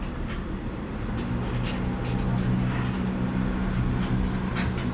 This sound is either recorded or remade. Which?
recorded